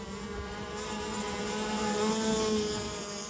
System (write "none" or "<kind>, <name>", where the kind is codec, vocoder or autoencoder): none